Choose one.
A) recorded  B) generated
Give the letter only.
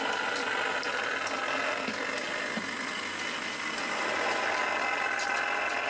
A